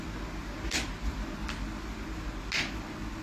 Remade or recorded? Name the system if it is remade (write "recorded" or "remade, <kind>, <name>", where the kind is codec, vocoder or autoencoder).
recorded